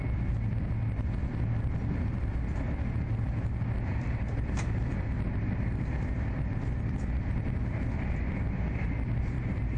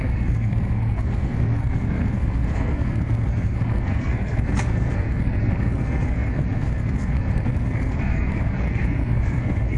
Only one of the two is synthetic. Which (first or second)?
second